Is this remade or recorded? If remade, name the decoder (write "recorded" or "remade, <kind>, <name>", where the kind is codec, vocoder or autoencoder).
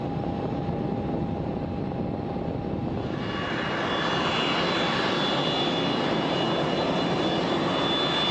recorded